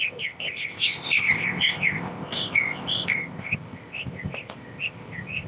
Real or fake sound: fake